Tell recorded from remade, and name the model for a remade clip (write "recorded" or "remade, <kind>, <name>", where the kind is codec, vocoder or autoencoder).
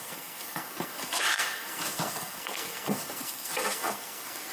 remade, codec, SNAC